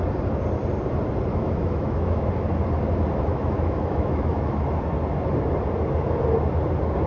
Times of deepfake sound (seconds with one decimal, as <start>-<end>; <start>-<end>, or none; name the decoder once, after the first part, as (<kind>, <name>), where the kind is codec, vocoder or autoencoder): 1.3-2.3 (autoencoder, DAC-VAE); 3.3-4.5